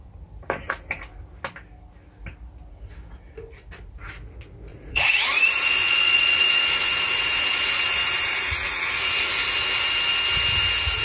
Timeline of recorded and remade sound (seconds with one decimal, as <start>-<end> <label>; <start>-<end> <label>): 0.0-4.7 recorded; 4.7-9.3 remade; 9.3-11.0 recorded